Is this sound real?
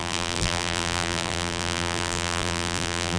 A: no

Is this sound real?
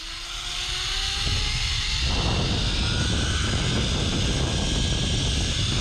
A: yes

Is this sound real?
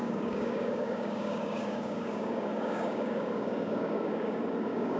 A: no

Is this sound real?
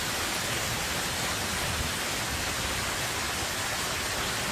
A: yes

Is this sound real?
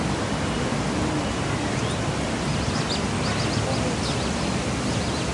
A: yes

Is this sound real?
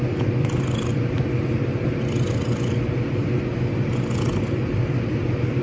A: yes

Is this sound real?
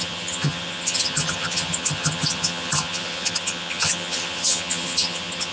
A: no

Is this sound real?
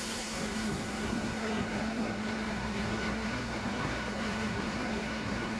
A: no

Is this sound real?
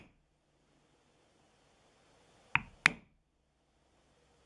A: yes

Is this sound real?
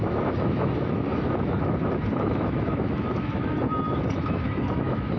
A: no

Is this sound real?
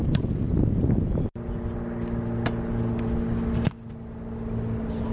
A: yes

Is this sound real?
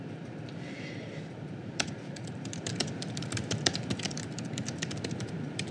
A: no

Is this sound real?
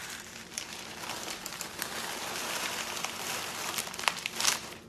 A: no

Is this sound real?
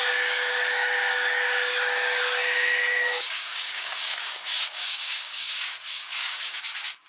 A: no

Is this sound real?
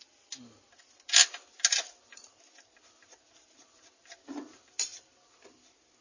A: yes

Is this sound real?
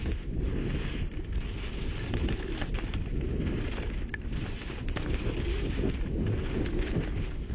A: yes